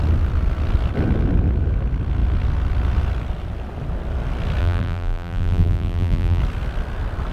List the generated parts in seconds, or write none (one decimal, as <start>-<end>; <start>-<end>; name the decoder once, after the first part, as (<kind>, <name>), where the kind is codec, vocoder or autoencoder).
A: 4.6-6.4 (vocoder, BigVGAN v2)